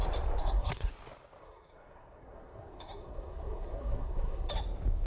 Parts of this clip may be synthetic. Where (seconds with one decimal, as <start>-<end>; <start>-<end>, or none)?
0.4-0.9; 1.4-4.5